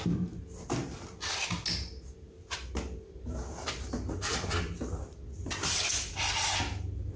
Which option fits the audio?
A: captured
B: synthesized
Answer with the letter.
A